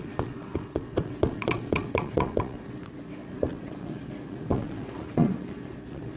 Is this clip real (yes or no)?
no